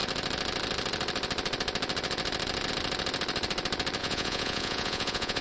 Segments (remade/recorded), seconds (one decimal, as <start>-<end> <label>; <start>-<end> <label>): 0.0-4.0 recorded; 4.0-5.4 remade